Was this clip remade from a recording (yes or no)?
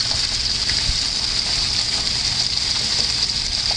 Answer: no